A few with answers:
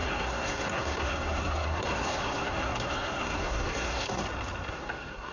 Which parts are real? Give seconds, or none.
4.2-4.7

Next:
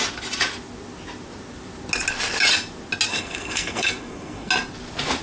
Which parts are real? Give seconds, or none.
0.0-3.1; 4.5-5.2

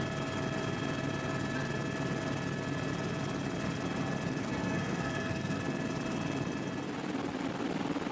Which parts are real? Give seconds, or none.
0.0-4.4; 5.6-8.1

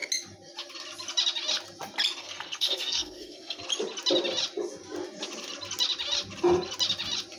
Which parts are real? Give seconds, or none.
0.0-2.2; 3.6-7.4